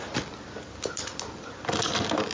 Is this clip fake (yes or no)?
no